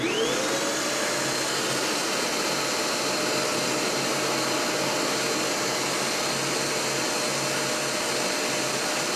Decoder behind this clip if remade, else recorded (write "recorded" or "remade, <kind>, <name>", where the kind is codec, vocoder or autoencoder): recorded